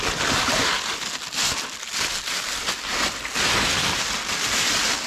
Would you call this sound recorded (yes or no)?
yes